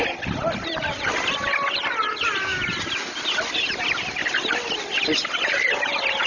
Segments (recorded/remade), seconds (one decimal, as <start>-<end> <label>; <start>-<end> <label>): 0.0-6.3 recorded